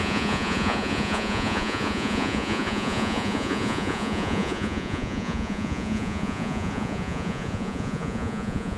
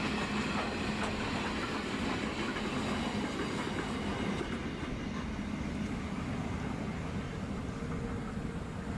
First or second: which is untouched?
second